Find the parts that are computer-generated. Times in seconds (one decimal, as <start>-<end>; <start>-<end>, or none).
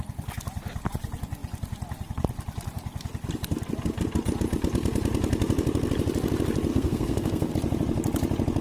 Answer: 6.7-7.5